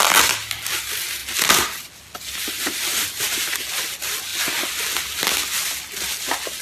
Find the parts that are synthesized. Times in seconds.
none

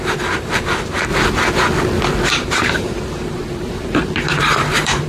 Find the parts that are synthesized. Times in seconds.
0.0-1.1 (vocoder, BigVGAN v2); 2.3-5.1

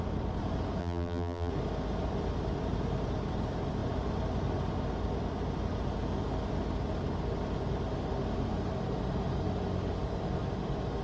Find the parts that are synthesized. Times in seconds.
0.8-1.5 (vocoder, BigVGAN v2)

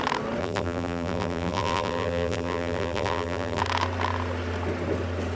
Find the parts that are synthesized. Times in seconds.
0.4-3.6 (vocoder, BigVGAN v2)